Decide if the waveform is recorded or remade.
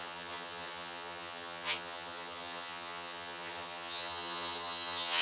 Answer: remade